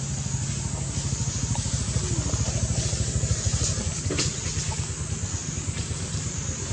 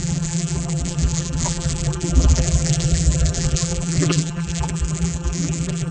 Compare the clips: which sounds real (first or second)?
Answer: first